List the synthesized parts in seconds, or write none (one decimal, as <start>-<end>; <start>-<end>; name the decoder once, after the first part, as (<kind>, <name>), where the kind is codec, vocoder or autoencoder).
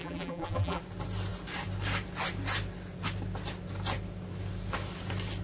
0.0-0.8 (vocoder, BigVGAN v2)